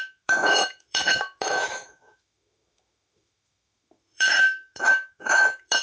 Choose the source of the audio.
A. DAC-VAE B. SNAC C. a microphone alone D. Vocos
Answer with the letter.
A